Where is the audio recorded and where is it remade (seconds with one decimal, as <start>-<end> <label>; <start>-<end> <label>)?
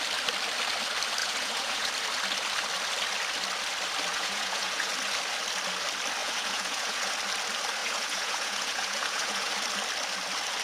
0.0-1.2 recorded; 1.2-1.9 remade; 1.9-4.1 recorded; 4.1-4.9 remade; 4.9-6.2 recorded; 6.2-7.1 remade; 7.1-7.8 recorded; 7.8-9.5 remade; 9.5-10.6 recorded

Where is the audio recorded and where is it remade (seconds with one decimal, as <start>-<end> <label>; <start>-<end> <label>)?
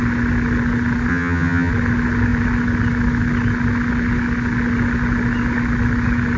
0.0-1.1 recorded; 1.1-1.7 remade; 1.7-6.4 recorded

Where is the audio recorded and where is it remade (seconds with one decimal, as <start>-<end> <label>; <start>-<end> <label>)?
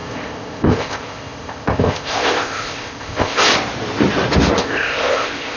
0.0-3.4 remade; 3.4-4.6 recorded; 4.6-5.6 remade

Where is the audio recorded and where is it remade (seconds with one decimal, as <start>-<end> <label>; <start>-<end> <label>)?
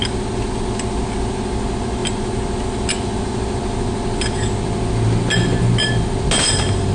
0.0-6.9 recorded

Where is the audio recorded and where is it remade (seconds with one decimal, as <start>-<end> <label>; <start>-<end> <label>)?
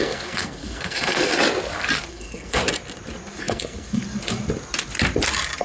0.0-1.3 remade; 1.3-2.1 recorded; 2.1-2.6 remade; 2.6-3.4 recorded; 3.4-4.0 remade; 4.0-5.6 recorded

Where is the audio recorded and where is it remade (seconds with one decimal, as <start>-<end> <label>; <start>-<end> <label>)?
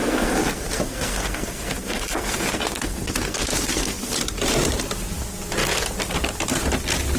0.0-4.2 remade; 4.2-7.2 recorded